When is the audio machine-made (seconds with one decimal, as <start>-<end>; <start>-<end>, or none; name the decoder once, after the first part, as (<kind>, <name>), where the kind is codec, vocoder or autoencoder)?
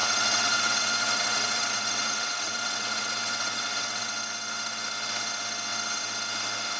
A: 0.0-4.1 (vocoder, WaveNeXt)